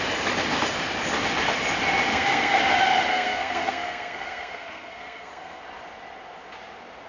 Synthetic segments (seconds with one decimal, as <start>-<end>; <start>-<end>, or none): 2.1-2.6; 3.1-5.6